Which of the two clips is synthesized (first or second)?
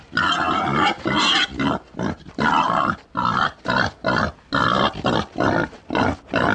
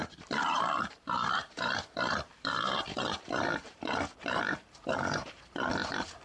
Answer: second